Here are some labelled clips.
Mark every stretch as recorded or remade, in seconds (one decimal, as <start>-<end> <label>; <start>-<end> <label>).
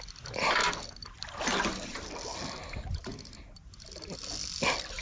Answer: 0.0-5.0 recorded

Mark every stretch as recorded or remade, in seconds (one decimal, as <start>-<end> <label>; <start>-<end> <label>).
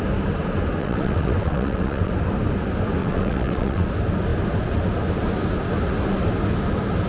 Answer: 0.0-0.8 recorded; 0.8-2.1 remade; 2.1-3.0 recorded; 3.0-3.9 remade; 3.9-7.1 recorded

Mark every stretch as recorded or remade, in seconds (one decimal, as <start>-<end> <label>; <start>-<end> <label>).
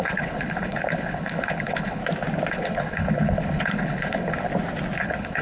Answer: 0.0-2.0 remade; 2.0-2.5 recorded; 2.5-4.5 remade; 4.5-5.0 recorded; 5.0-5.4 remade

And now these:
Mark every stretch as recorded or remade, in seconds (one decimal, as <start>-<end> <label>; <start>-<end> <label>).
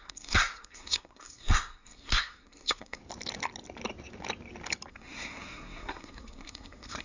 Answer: 0.0-3.0 remade; 3.0-4.9 recorded; 4.9-7.0 remade